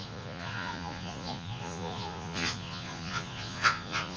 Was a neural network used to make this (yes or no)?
yes